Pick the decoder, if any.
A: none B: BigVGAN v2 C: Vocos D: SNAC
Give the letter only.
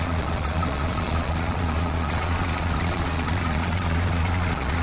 C